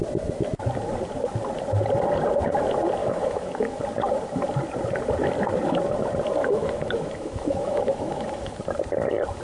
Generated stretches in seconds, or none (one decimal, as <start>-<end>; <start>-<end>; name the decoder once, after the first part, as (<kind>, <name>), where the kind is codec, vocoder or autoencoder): 3.0-3.8 (autoencoder, DAC-VAE); 6.4-8.6